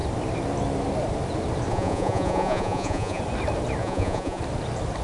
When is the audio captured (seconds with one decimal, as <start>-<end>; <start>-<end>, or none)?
0.0-1.7; 3.2-3.8; 4.4-5.0